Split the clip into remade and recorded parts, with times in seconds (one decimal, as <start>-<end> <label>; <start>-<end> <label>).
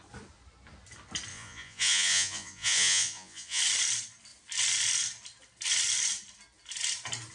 0.0-1.3 recorded; 1.3-3.6 remade; 3.6-7.3 recorded